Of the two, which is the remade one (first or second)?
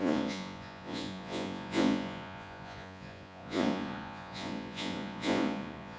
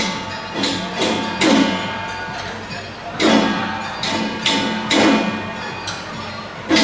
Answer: first